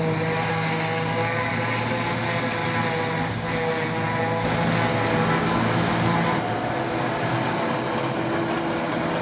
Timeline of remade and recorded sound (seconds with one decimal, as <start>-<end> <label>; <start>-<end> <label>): 0.0-0.5 recorded; 0.5-1.5 remade; 1.5-9.2 recorded